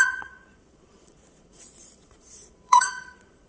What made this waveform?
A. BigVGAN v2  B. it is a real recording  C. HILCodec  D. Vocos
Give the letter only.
D